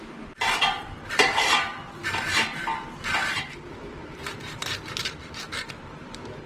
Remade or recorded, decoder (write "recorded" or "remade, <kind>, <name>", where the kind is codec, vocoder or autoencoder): remade, vocoder, BigVGAN v2